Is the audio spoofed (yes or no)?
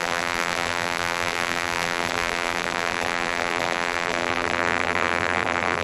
yes